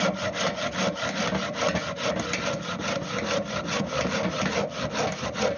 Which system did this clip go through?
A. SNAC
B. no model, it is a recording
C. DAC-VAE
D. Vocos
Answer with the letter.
B